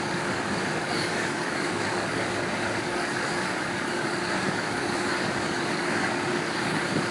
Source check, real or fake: fake